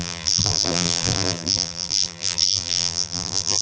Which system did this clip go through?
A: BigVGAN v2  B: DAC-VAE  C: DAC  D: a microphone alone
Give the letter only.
A